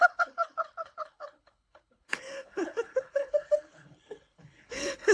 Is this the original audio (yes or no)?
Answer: no